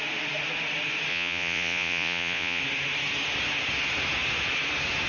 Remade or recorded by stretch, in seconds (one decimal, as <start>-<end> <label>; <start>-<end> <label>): 0.0-1.1 recorded; 1.1-2.6 remade; 2.6-5.1 recorded